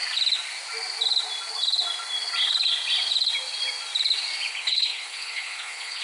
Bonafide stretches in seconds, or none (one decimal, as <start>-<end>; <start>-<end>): 0.0-4.5